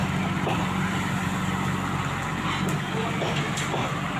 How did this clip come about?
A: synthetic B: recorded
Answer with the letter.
B